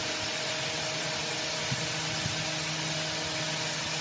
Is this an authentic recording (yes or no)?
yes